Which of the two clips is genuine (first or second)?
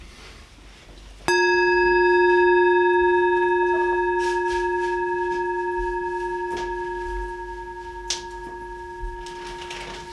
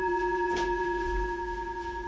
first